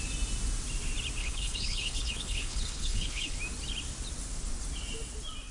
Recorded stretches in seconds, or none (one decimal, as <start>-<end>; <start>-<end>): 0.0-1.2; 3.4-5.5